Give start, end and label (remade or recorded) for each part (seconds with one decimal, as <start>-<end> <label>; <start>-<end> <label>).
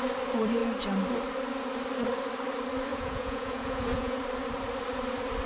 0.0-2.9 recorded; 2.9-4.2 remade; 4.2-5.5 recorded